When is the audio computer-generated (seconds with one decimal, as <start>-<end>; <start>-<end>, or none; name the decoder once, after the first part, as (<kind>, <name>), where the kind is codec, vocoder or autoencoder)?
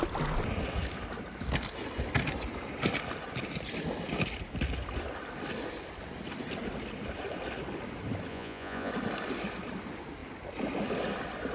8.3-8.9 (vocoder, Vocos)